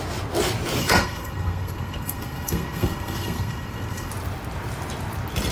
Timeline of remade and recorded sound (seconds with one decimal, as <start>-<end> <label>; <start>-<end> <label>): 0.0-0.8 recorded; 0.8-4.1 remade; 4.1-5.5 recorded

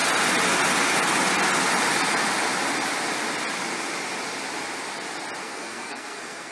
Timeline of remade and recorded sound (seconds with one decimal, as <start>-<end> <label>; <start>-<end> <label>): 0.0-5.4 recorded; 5.4-6.5 remade